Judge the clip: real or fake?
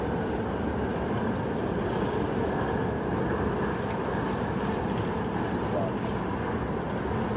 real